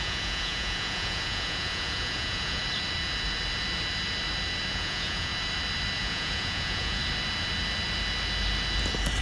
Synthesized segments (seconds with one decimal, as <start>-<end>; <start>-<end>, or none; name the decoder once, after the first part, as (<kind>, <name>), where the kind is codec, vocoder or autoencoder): 0.0-2.6 (vocoder, Vocos); 4.7-5.3; 6.0-7.0